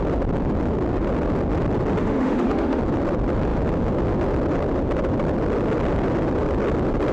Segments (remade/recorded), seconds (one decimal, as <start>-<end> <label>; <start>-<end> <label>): 0.0-2.0 recorded; 2.0-2.8 remade; 2.8-7.1 recorded